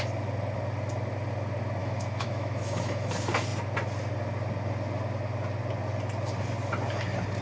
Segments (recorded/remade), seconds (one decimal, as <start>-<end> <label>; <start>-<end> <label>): 0.0-1.8 recorded; 1.8-3.1 remade; 3.1-7.4 recorded